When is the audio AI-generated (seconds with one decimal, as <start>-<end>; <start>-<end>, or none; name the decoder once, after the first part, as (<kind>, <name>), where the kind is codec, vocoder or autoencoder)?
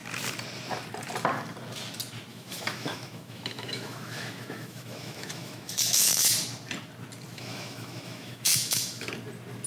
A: 2.3-6.3 (autoencoder, DAC-VAE); 7.3-9.1